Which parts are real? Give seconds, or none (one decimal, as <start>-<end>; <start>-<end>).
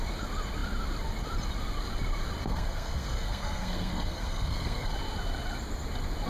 0.0-2.4; 4.9-6.3